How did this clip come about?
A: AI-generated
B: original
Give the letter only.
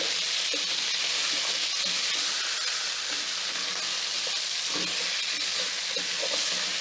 B